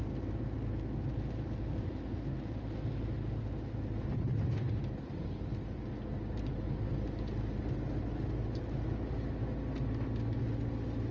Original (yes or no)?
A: yes